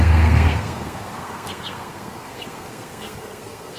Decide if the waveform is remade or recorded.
remade